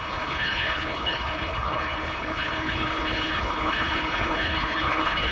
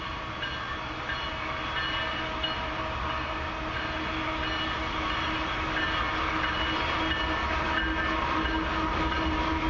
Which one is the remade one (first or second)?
first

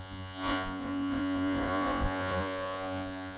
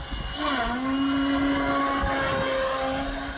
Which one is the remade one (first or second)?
first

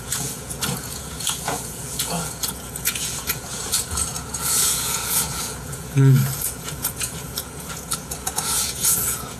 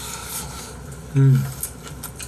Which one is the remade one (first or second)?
first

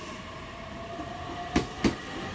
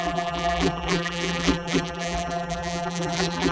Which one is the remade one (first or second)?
second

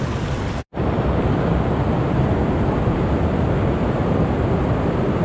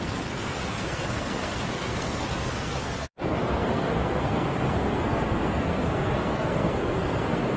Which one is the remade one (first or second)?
second